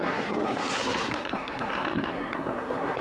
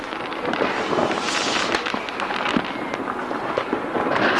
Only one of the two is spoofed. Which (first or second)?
first